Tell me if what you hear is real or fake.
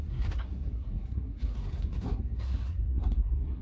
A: fake